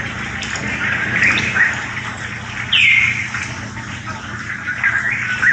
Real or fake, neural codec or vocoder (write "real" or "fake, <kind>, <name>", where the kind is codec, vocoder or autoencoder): real